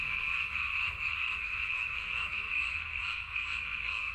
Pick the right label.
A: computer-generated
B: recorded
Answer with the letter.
A